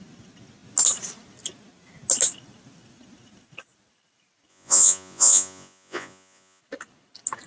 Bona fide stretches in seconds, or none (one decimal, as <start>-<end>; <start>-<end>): 0.0-4.5; 6.6-7.5